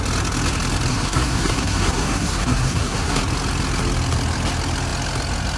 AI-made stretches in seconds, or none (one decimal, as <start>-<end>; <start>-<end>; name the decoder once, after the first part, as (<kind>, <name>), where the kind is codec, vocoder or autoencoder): 0.9-3.2 (codec, SNAC)